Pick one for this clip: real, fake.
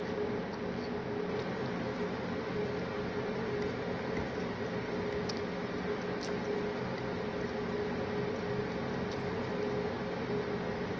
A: real